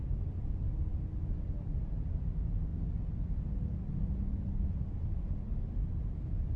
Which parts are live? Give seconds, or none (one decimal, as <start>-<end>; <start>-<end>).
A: 0.0-6.6